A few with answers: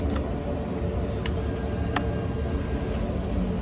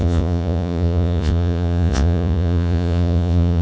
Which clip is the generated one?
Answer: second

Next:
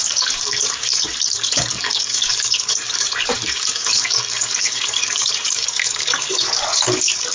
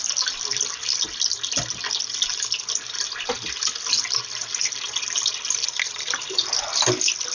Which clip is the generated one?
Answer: first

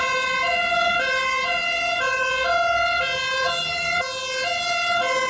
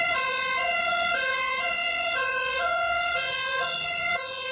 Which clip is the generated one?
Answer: second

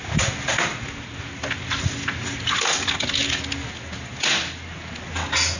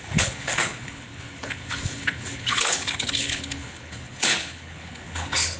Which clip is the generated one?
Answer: second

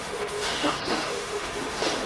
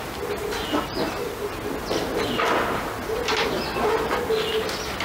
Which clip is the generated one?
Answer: first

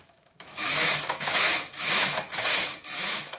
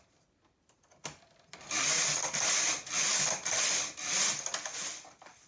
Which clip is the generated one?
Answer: first